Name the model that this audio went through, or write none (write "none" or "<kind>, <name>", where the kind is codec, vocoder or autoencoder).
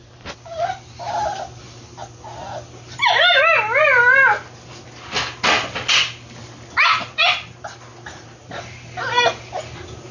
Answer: none